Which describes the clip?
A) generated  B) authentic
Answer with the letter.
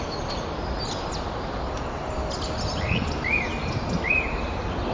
B